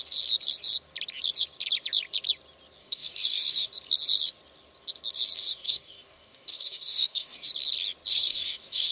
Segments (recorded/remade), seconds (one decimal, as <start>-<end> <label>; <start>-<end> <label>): 0.0-2.8 recorded; 2.8-3.7 remade; 3.7-5.4 recorded; 5.4-7.5 remade; 7.5-8.1 recorded; 8.1-8.9 remade